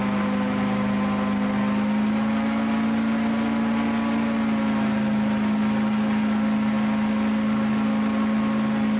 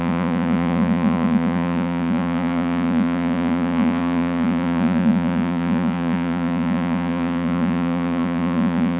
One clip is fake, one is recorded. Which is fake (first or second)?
second